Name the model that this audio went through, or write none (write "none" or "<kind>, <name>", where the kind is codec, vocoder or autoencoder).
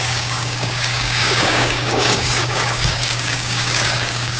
codec, DAC